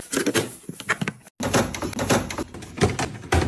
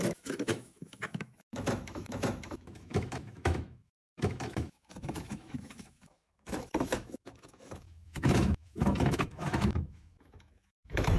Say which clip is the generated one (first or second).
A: second